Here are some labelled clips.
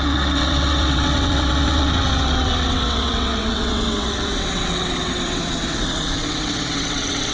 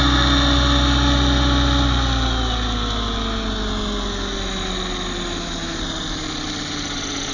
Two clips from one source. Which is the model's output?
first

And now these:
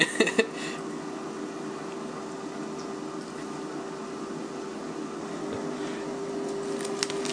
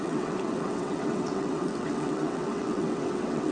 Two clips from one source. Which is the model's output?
second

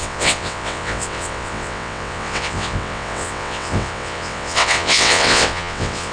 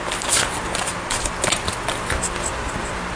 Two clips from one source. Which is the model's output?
first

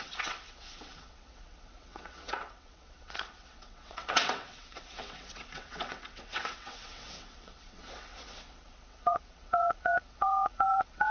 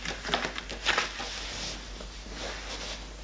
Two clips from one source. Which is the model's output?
first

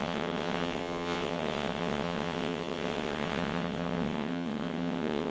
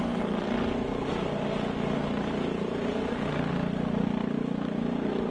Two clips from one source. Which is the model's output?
first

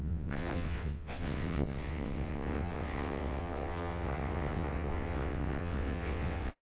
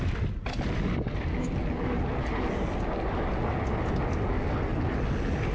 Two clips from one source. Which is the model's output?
first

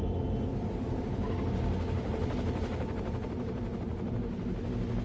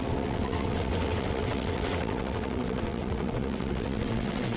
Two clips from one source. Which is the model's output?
second